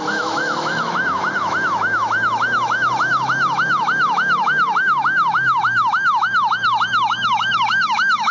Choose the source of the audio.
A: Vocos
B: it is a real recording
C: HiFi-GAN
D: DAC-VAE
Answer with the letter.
D